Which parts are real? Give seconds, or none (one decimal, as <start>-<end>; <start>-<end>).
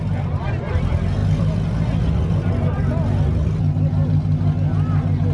0.0-5.3